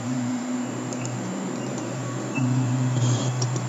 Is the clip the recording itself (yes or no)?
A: no